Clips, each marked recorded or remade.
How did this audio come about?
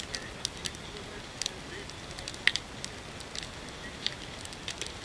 recorded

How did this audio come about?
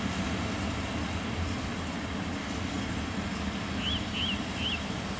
recorded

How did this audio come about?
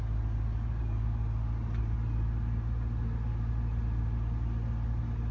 recorded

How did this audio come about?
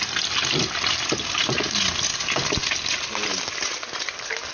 recorded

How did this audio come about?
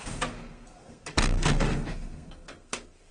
remade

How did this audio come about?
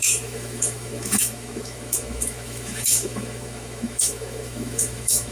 remade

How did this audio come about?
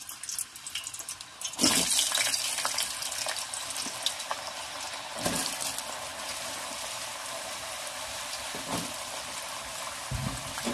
recorded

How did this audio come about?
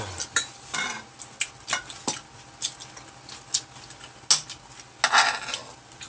recorded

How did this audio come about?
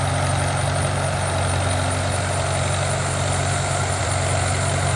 remade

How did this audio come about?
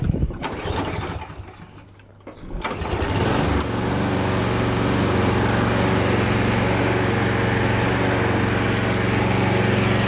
recorded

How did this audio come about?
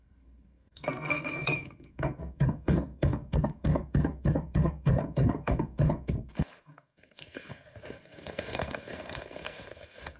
remade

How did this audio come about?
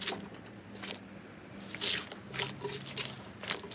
recorded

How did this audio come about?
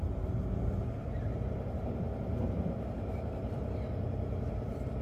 remade